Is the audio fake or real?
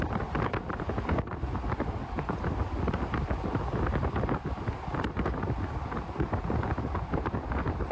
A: real